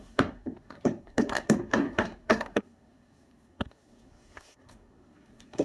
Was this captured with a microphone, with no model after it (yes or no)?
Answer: no